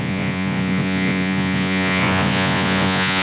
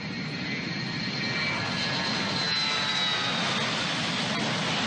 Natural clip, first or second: second